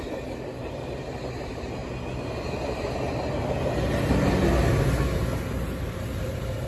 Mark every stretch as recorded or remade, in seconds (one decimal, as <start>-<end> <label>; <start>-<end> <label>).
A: 0.0-1.8 remade; 1.8-5.8 recorded; 5.8-6.7 remade